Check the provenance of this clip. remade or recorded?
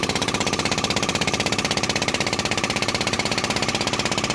remade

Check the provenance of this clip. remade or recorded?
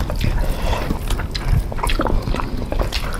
recorded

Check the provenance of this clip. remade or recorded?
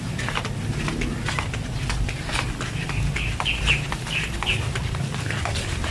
recorded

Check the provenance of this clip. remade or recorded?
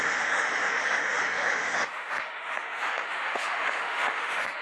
remade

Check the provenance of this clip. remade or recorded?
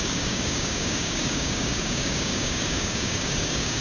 remade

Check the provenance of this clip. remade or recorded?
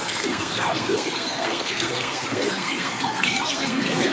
remade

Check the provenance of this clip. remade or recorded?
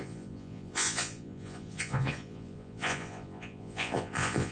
remade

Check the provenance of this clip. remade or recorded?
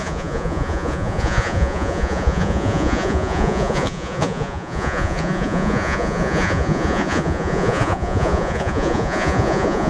remade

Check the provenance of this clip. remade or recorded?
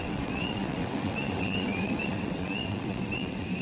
remade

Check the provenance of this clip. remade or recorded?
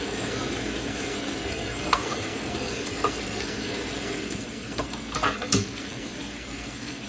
remade